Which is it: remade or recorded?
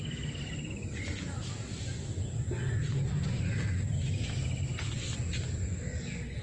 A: recorded